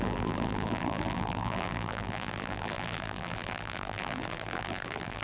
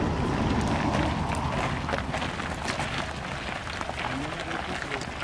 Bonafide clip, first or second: second